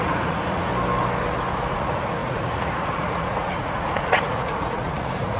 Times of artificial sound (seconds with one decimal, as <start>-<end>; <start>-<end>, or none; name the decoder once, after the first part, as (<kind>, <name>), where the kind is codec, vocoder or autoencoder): 0.0-0.7 (vocoder, Vocos); 1.7-5.4